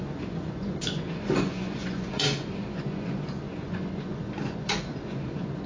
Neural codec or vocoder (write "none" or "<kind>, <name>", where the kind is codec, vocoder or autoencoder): vocoder, Vocos